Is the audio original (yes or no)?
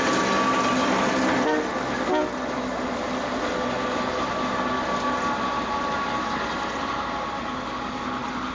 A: yes